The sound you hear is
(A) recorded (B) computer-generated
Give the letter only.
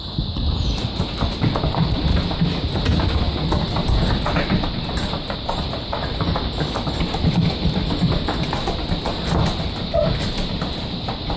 A